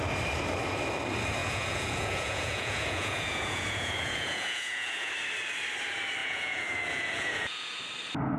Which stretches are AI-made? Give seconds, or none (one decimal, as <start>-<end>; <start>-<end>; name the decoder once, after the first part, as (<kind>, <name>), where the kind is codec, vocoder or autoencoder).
1.4-5.1 (vocoder, Vocos); 6.2-7.8